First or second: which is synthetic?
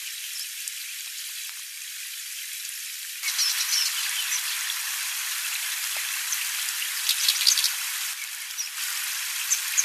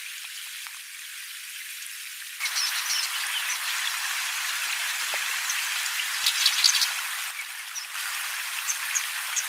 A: first